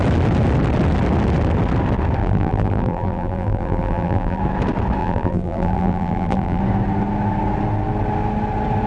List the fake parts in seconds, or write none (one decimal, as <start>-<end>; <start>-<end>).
2.2-4.4; 5.0-6.6